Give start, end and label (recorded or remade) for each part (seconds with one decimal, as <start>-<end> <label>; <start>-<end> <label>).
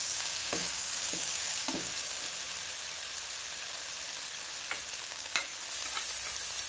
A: 0.0-2.3 remade; 2.3-5.0 recorded; 5.0-5.5 remade; 5.5-6.7 recorded